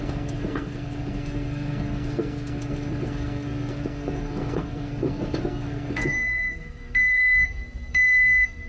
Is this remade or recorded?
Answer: remade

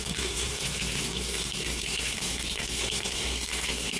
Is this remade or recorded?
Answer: remade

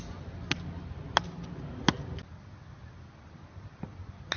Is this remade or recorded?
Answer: recorded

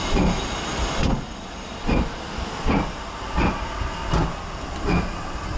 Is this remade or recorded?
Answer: recorded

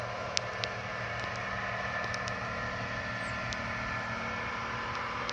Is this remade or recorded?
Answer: recorded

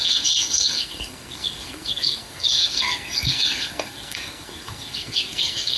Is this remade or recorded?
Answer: remade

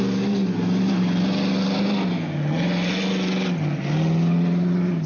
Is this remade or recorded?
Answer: recorded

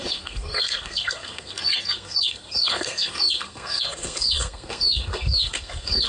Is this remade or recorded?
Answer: remade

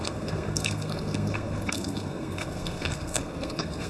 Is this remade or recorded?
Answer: remade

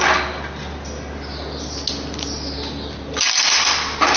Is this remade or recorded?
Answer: recorded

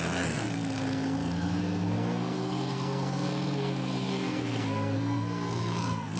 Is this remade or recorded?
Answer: remade